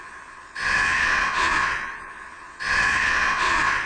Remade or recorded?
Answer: remade